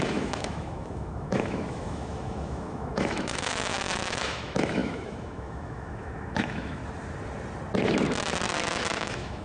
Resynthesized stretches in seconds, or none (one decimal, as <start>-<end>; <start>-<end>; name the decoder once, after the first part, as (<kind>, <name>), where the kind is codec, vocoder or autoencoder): 0.0-6.8 (autoencoder, DAC-VAE); 9.0-9.4